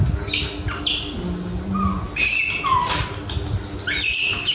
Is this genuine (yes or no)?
yes